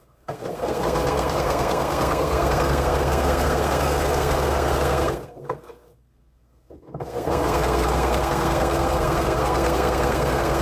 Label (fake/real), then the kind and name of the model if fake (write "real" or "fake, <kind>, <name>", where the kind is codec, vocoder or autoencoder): fake, codec, SNAC